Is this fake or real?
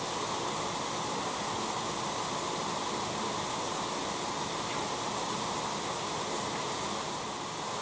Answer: real